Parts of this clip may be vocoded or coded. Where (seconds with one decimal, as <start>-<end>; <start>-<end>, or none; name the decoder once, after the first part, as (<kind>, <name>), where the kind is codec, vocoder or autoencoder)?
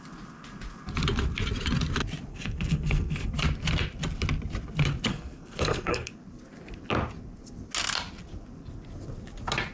2.3-3.3 (codec, SNAC); 5.1-6.1